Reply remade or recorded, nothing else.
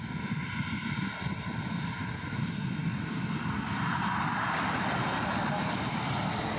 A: recorded